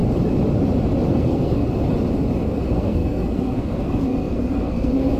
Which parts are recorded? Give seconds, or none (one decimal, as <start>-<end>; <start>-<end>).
0.0-1.1; 1.6-2.4